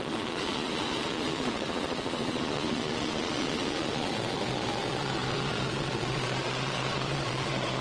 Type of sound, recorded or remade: remade